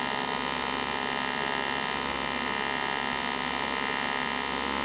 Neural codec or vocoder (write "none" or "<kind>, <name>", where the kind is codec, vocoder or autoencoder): none